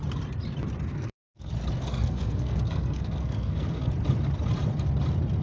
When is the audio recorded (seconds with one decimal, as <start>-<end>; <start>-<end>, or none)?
0.0-0.9; 1.5-1.9; 3.9-5.4